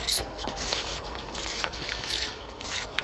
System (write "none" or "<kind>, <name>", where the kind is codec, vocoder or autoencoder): codec, SNAC